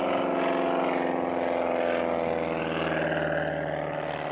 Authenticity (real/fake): real